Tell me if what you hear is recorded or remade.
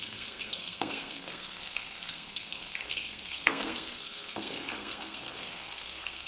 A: remade